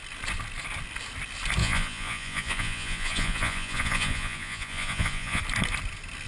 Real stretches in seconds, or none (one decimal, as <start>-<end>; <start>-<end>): 0.0-1.6; 5.4-6.3